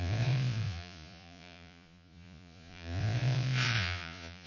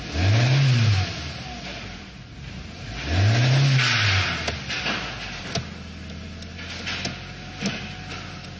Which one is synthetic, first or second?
first